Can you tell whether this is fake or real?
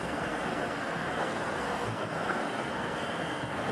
fake